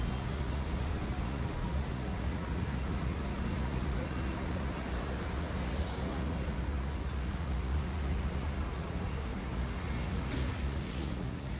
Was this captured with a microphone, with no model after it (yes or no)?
no